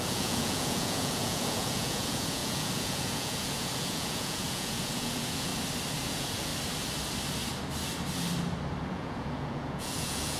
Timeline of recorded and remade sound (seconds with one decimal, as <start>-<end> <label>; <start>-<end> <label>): 0.0-5.5 remade; 5.5-6.1 recorded; 6.1-6.5 remade; 6.5-8.9 recorded; 8.9-10.4 remade

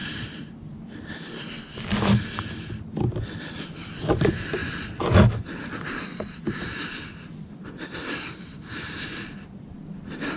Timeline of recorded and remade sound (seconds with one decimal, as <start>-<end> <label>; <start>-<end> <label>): 0.0-10.4 recorded

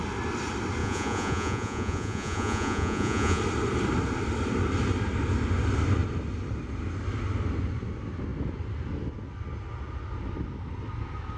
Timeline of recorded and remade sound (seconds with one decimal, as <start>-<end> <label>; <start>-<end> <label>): 0.0-0.8 recorded; 0.8-3.4 remade; 3.4-11.4 recorded

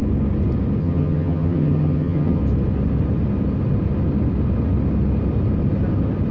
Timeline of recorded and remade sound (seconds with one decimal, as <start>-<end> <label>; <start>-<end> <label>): 0.0-0.8 recorded; 0.8-2.4 remade; 2.4-6.3 recorded

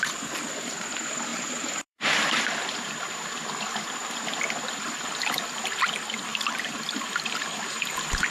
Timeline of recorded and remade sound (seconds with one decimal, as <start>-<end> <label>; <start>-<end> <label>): 0.0-1.3 recorded; 1.3-2.4 remade; 2.4-6.3 recorded; 6.3-7.4 remade; 7.4-8.3 recorded